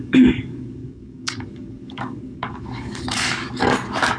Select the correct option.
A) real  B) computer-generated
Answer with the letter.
B